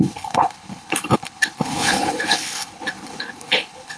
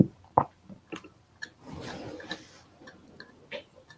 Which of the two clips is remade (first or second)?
first